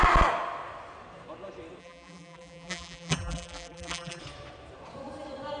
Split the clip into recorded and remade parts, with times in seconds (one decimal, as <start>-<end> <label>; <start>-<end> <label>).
0.0-1.8 recorded; 1.8-4.2 remade; 4.2-5.6 recorded